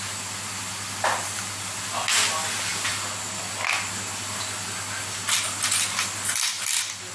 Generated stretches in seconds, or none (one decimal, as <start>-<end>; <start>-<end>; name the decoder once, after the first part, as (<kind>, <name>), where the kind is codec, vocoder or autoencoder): none